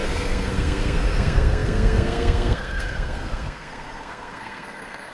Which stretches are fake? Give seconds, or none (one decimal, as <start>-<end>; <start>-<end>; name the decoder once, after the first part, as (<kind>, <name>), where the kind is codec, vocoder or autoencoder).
0.0-5.1 (codec, SNAC)